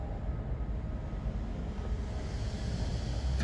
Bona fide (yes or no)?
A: yes